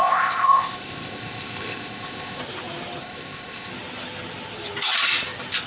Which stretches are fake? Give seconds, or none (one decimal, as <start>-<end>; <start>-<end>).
0.0-2.4; 3.0-3.7